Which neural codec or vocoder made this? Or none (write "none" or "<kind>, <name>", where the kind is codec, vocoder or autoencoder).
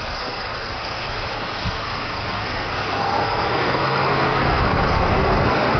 codec, SNAC